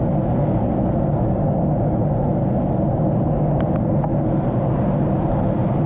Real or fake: real